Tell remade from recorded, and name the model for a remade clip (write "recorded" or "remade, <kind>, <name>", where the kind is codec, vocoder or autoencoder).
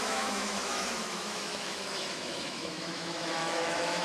remade, autoencoder, DAC-VAE